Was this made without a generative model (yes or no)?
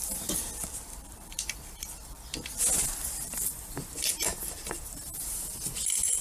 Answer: no